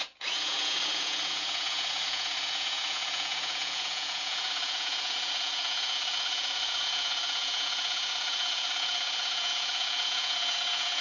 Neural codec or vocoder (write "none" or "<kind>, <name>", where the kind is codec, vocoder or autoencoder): vocoder, Vocos